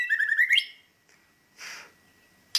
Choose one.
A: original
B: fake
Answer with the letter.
A